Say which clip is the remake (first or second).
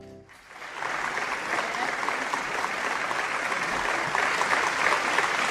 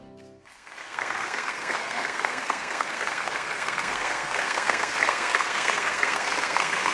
second